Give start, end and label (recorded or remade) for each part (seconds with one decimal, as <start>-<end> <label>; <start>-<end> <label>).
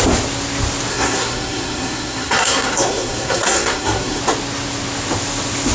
0.0-0.9 recorded; 0.9-4.2 remade; 4.2-5.7 recorded